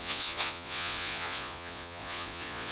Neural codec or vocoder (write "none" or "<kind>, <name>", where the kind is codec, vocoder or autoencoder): vocoder, Vocos